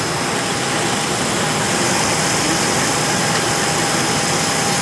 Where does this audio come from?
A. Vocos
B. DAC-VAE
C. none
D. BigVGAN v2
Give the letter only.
C